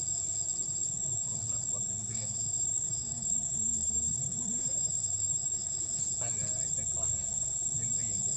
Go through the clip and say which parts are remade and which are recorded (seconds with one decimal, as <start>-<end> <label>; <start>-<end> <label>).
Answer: 0.0-2.0 recorded; 2.0-6.0 remade; 6.0-8.4 recorded